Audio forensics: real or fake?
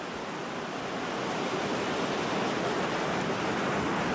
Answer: real